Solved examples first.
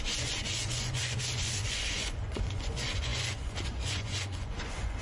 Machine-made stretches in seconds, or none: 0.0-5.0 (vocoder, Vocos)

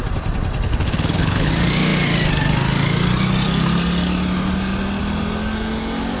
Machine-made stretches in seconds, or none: 0.7-1.5 (codec, HILCodec)

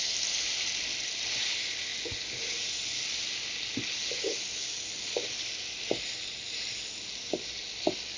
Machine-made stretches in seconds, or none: none

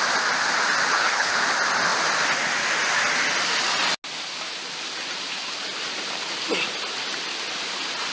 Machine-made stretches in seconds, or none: 0.9-1.4 (codec, HILCodec)

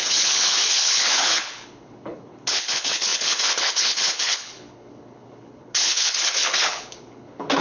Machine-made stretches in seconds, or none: 0.0-7.6 (codec, HILCodec)